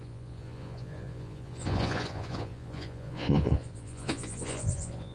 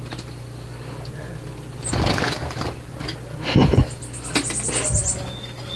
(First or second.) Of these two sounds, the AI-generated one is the first